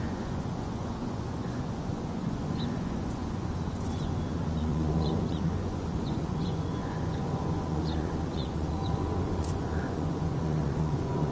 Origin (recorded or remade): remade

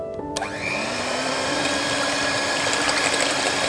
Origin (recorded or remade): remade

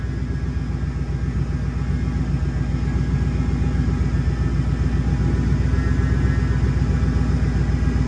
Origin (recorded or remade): recorded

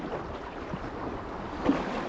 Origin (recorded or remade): recorded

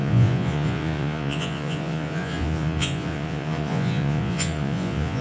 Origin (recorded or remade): remade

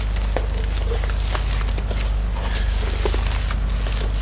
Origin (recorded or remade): recorded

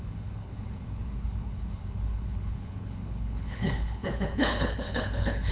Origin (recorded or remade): remade